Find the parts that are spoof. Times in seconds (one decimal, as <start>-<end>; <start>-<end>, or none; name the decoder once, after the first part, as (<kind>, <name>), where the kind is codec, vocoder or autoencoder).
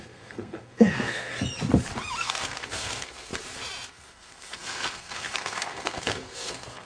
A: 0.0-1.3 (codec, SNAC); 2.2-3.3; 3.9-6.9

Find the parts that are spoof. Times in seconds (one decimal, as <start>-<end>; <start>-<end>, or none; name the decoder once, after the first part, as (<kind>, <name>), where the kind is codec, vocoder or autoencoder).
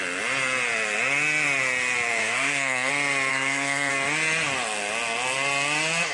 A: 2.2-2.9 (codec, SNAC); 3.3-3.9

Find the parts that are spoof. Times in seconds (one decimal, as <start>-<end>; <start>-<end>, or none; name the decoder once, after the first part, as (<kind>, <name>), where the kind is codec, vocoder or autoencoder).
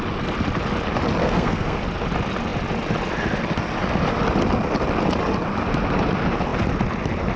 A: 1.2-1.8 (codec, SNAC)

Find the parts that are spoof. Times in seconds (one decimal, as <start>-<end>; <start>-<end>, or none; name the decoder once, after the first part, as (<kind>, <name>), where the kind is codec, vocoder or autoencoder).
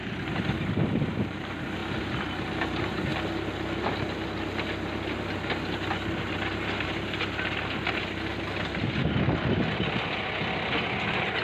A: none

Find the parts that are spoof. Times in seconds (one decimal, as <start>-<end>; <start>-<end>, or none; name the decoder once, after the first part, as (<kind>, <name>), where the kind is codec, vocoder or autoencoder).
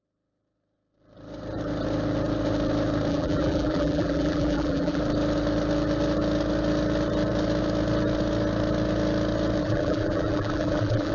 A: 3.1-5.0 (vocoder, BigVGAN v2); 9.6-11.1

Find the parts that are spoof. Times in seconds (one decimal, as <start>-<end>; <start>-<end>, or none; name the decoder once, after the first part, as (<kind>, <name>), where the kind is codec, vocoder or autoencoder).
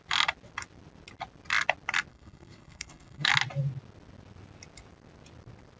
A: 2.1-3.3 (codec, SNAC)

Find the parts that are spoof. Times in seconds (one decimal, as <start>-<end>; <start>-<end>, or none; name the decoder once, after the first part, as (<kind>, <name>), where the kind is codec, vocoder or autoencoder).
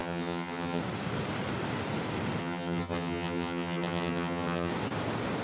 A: 0.0-0.8 (vocoder, HiFi-GAN); 2.4-4.7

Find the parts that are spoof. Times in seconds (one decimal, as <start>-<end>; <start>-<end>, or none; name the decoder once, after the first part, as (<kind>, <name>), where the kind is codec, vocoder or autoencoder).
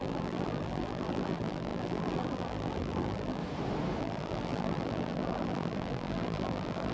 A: 0.0-3.4 (vocoder, BigVGAN v2); 4.0-6.9